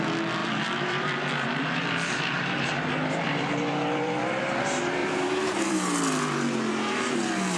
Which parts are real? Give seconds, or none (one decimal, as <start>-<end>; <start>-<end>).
0.0-0.4; 4.4-5.0; 6.7-7.6